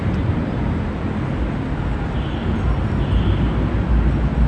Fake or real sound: real